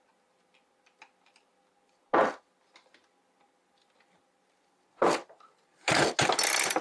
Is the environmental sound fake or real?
real